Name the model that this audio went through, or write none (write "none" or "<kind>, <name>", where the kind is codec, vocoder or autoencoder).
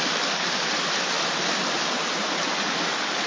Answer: none